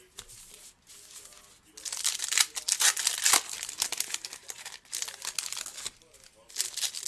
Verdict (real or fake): real